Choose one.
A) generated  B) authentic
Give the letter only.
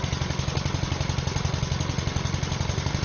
B